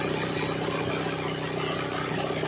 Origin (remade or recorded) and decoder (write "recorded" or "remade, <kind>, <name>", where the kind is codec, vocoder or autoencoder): recorded